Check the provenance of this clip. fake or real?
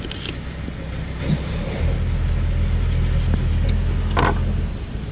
real